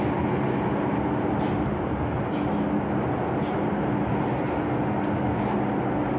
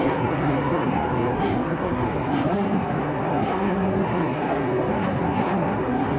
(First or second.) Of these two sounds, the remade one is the second